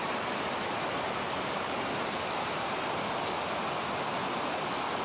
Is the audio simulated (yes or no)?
no